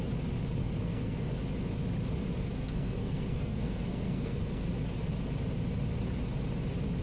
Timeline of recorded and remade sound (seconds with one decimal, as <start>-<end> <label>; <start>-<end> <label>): 0.0-0.6 recorded; 0.6-1.3 remade; 1.3-2.4 recorded; 2.4-4.7 remade; 4.7-7.0 recorded